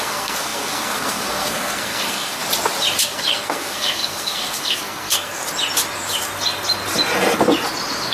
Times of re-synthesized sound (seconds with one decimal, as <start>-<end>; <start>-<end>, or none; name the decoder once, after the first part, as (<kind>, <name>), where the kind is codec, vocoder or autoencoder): 0.0-2.4 (codec, SNAC); 3.0-5.4